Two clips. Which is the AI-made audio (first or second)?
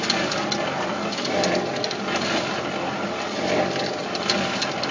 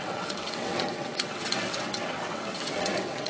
second